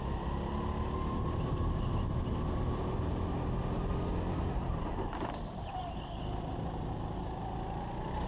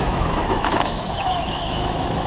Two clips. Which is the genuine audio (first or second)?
first